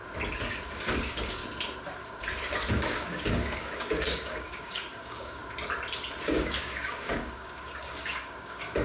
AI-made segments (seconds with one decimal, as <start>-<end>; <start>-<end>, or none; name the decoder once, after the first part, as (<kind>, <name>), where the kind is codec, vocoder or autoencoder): 1.0-1.4 (codec, DAC); 2.7-5.4; 6.3-8.8